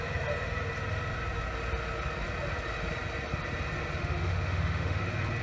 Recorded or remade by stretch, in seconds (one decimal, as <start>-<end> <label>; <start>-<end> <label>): 0.0-4.0 recorded; 4.0-5.0 remade; 5.0-5.4 recorded